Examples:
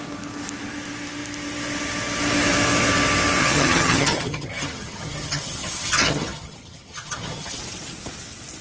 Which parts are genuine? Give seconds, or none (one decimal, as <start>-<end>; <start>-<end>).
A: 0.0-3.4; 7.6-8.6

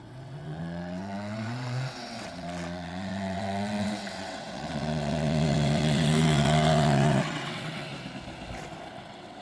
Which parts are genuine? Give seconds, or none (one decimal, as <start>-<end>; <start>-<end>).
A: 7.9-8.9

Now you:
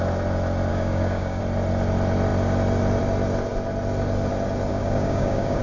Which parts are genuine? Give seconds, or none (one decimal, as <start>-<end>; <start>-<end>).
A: 0.0-0.7; 1.4-4.7

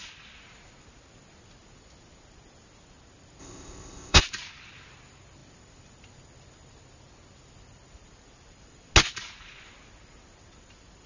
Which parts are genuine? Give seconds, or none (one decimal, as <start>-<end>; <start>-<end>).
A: 0.0-3.4; 4.2-11.1

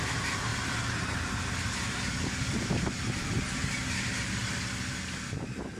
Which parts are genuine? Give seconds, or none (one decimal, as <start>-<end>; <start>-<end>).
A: 0.0-5.8

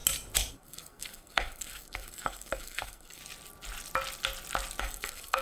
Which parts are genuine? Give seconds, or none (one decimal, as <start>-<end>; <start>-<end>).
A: 0.0-0.5; 3.2-4.8

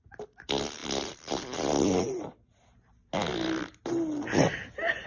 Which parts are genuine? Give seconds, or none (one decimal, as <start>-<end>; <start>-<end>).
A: 0.0-5.1

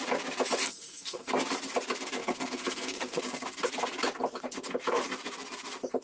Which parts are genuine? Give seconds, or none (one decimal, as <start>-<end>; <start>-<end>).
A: 0.0-0.6; 1.3-2.2; 3.2-6.0